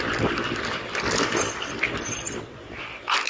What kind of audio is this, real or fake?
fake